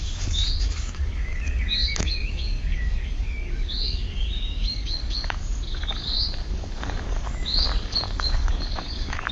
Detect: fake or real fake